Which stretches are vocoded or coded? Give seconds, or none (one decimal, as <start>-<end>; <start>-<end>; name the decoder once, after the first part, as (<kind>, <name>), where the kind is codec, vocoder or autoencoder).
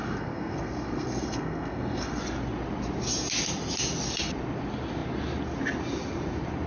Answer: 0.0-2.2 (codec, SNAC)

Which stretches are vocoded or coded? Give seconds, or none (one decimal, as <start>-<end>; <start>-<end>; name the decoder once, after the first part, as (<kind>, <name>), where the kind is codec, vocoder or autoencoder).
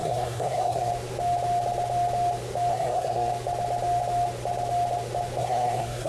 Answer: 0.0-0.9 (codec, SNAC); 2.7-3.3; 5.4-6.1